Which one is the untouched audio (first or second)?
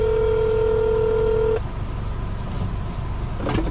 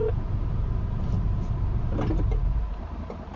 first